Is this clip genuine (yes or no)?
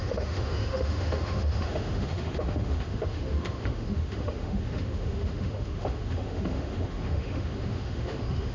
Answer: no